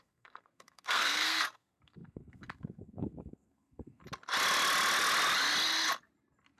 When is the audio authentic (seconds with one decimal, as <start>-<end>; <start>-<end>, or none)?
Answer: 4.0-6.6